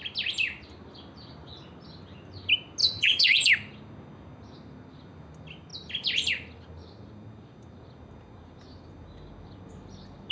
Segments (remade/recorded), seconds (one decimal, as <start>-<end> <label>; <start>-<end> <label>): 0.0-2.8 recorded; 2.8-3.5 remade; 3.5-10.3 recorded